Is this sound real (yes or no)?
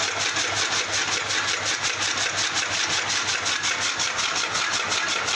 yes